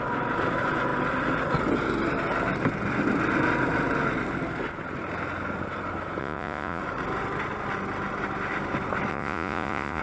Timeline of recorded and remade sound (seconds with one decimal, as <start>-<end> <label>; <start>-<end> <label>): 0.0-6.2 recorded; 6.2-6.8 remade; 6.8-9.1 recorded; 9.1-10.0 remade